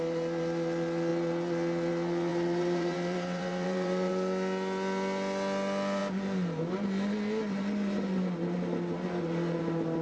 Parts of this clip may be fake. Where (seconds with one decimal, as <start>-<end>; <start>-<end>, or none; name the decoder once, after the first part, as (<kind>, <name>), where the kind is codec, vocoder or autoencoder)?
2.3-4.1 (vocoder, BigVGAN v2)